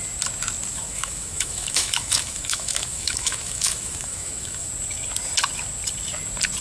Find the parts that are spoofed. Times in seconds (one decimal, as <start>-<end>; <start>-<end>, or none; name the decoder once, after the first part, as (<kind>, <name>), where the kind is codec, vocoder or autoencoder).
0.7-4.7 (autoencoder, DAC-VAE)